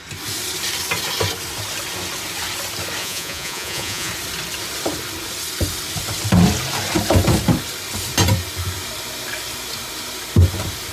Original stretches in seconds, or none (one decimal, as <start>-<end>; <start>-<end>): 0.0-3.0; 4.1-10.9